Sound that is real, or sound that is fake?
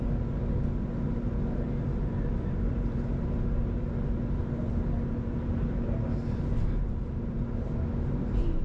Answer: real